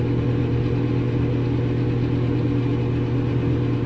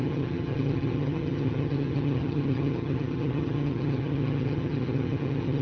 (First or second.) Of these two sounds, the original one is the first